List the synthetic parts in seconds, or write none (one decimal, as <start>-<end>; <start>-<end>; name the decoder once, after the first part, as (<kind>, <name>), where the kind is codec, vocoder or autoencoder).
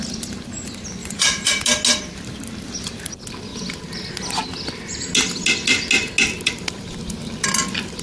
1.0-1.5 (vocoder, BigVGAN v2)